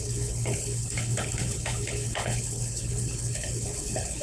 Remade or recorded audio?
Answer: remade